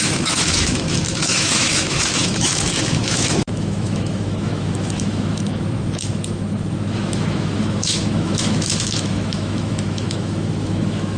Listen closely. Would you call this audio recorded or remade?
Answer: remade